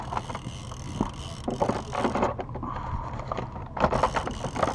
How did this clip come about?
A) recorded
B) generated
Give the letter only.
A